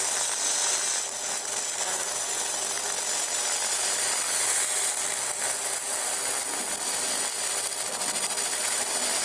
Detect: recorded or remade recorded